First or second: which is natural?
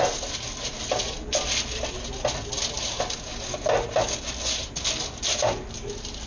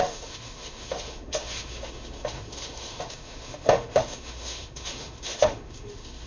first